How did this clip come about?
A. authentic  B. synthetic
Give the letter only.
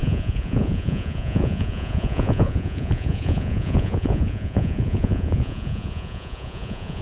B